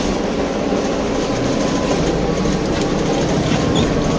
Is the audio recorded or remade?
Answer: recorded